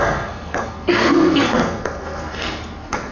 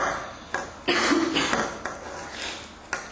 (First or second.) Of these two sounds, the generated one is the first